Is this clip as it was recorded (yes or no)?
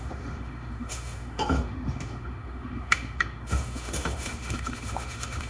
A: no